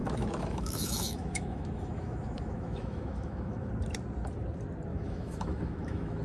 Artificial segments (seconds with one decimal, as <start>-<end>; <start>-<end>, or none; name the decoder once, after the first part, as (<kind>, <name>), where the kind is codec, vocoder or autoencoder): 0.0-3.7 (autoencoder, DAC-VAE); 4.9-6.2